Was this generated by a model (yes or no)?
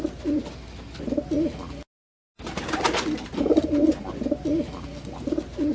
no